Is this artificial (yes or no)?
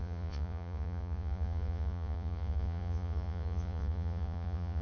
yes